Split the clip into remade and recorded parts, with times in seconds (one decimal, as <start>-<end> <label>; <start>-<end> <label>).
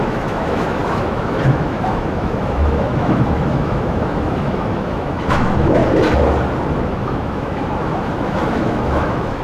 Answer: 0.0-5.8 remade; 5.8-6.8 recorded; 6.8-9.4 remade